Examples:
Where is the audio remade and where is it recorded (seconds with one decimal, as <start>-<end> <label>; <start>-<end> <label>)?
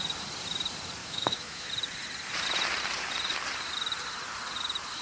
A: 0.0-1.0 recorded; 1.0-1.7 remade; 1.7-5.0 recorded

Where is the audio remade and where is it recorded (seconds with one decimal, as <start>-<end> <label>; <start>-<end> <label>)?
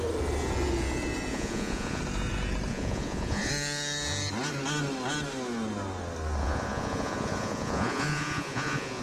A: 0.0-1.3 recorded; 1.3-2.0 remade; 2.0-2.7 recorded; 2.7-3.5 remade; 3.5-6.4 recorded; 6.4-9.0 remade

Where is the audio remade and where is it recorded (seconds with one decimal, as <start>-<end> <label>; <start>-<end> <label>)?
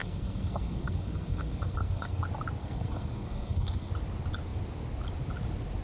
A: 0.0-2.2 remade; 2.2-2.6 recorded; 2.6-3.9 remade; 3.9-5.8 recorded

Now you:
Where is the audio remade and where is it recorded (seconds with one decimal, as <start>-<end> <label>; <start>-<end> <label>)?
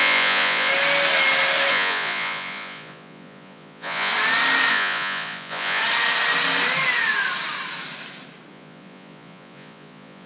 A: 0.0-0.7 remade; 0.7-1.7 recorded; 1.7-4.1 remade; 4.1-4.7 recorded; 4.7-5.8 remade; 5.8-8.5 recorded; 8.5-10.3 remade